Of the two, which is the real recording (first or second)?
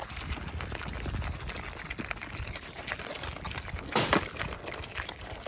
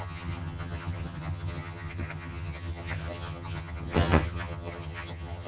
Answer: first